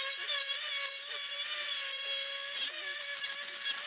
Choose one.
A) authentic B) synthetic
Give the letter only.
A